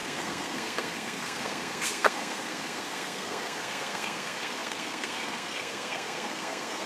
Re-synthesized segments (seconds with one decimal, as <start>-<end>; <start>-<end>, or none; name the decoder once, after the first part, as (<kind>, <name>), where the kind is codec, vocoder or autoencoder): 0.0-6.9 (codec, SNAC)

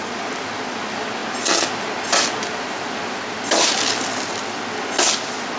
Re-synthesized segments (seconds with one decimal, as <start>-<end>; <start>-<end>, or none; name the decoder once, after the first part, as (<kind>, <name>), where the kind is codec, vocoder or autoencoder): none

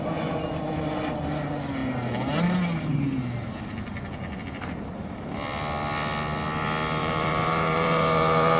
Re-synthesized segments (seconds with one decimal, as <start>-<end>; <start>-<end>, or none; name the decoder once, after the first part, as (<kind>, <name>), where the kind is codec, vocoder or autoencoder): 7.0-8.6 (vocoder, BigVGAN v2)

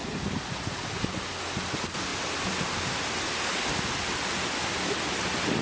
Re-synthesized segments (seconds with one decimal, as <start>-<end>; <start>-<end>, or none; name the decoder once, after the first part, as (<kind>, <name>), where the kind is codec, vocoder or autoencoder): 0.0-1.4 (vocoder, BigVGAN v2); 2.1-2.8

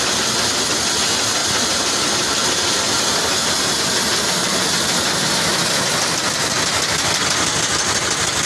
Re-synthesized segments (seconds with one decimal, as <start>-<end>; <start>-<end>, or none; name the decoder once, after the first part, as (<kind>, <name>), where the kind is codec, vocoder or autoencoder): 1.4-4.6 (vocoder, BigVGAN v2)

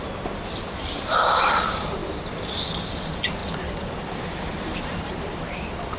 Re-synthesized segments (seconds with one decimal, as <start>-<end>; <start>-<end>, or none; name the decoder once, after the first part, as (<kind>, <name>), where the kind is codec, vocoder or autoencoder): 0.0-2.0 (vocoder, BigVGAN v2); 2.8-6.0

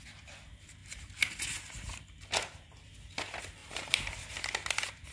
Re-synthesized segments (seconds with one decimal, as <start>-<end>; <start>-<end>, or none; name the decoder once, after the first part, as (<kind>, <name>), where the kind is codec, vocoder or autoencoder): 0.8-1.4 (vocoder, BigVGAN v2); 3.6-4.1